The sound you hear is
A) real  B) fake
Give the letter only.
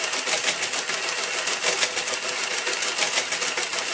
A